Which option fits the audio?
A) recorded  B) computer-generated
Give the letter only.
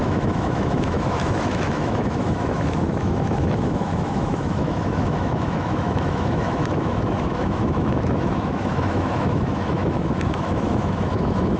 B